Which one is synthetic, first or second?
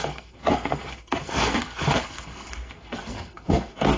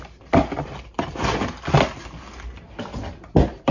first